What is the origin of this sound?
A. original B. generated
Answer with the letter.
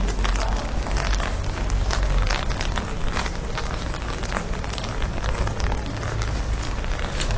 A